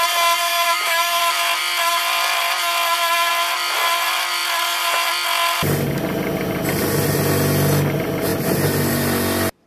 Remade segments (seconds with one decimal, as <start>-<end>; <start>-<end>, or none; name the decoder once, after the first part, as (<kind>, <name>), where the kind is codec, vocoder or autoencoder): 0.5-1.2 (autoencoder, DAC-VAE)